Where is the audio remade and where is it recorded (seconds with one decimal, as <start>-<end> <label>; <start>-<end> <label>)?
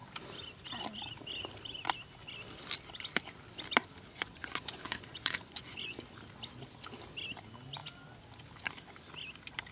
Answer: 0.0-4.1 recorded; 4.1-6.0 remade; 6.0-9.7 recorded